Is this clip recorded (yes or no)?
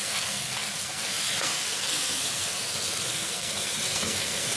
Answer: no